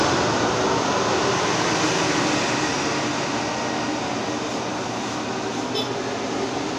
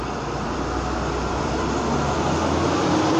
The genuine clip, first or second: first